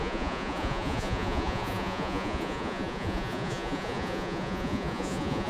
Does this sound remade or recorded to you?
remade